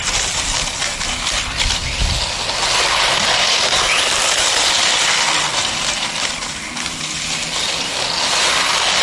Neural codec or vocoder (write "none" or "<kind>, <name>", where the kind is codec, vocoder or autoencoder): none